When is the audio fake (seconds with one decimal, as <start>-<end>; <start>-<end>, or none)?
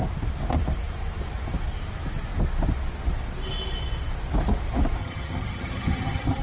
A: 5.0-6.4